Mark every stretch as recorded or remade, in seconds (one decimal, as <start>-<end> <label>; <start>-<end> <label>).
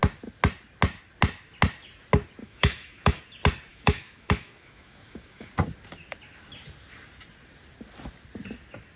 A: 0.0-2.4 recorded; 2.4-3.2 remade; 3.2-3.7 recorded; 3.7-5.5 remade; 5.5-9.0 recorded